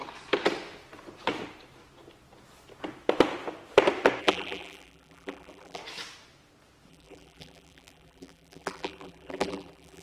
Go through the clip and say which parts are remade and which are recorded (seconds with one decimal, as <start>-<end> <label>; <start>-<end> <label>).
0.0-4.2 recorded; 4.2-5.8 remade; 5.8-6.9 recorded; 6.9-10.0 remade